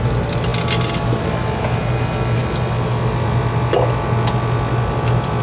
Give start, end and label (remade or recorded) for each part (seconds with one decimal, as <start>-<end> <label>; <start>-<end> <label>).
0.0-5.4 recorded